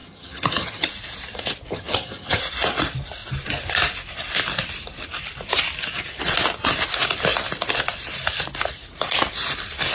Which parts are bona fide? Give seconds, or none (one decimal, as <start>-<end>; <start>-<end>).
0.9-1.7; 2.4-9.9

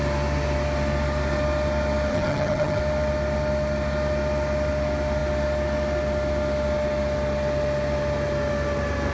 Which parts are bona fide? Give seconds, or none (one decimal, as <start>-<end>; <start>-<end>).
0.0-2.1; 2.8-9.1

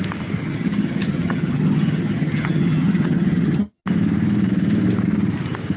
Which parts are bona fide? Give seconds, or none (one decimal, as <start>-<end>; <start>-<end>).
0.0-0.4; 3.8-5.8

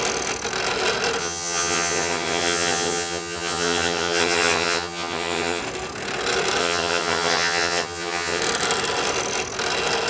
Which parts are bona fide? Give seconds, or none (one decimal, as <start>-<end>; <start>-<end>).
0.0-1.2; 5.6-6.6; 8.4-10.1

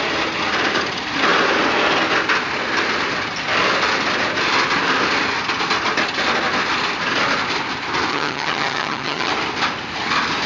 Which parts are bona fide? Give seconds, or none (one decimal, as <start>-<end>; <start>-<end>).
0.0-8.1; 9.3-10.5

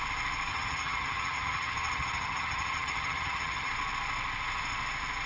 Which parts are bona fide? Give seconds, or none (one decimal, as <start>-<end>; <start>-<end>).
0.0-0.5; 3.7-5.3